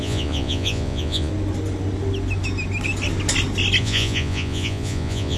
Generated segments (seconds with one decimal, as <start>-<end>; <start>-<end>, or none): 0.0-1.3; 3.8-5.4